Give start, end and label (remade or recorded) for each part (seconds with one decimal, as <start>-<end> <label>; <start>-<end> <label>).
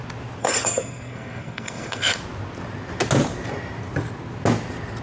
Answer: 0.0-0.4 recorded; 0.4-2.2 remade; 2.2-5.0 recorded